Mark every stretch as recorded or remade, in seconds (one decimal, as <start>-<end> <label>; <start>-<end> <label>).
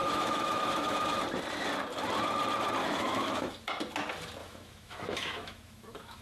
0.0-1.2 remade; 1.2-2.8 recorded; 2.8-3.5 remade; 3.5-4.4 recorded; 4.4-6.2 remade